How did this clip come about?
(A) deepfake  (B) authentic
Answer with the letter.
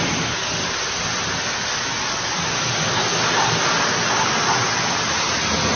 B